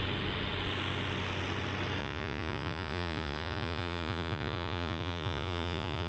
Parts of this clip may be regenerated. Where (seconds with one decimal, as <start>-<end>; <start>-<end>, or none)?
2.0-6.1